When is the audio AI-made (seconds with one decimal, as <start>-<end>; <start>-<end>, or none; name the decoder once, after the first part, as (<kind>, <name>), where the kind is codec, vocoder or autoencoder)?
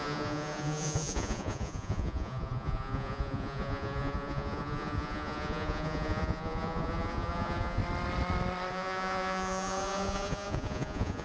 0.0-7.8 (vocoder, Vocos); 8.7-11.2